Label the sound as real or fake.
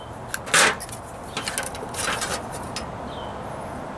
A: real